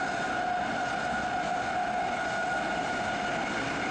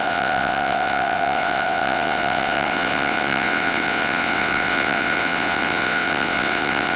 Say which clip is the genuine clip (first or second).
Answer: first